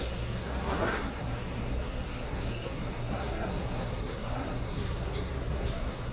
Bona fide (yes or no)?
no